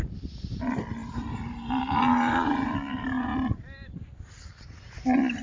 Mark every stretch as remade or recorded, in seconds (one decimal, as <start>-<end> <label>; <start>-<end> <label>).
0.0-0.9 recorded; 0.9-4.1 remade; 4.1-5.4 recorded